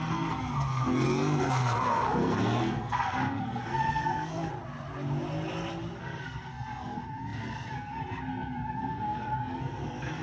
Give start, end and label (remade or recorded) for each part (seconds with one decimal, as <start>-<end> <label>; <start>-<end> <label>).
0.0-4.5 remade; 4.5-6.0 recorded; 6.0-10.2 remade